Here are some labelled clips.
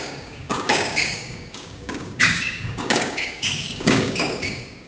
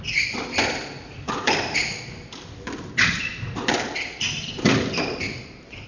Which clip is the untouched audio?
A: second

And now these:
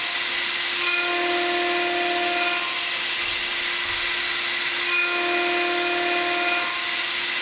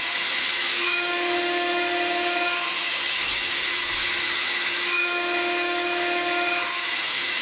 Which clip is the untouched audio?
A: first